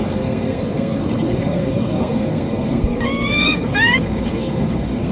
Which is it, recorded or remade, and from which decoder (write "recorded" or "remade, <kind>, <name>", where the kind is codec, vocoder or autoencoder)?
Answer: remade, codec, SNAC